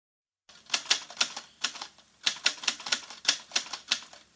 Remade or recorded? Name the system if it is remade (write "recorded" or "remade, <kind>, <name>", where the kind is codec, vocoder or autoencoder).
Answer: recorded